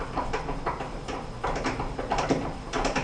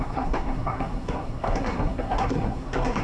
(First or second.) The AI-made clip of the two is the second